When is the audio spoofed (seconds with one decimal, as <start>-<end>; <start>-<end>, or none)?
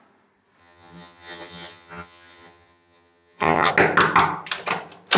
0.6-3.7